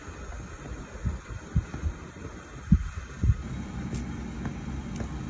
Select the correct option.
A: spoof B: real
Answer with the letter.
B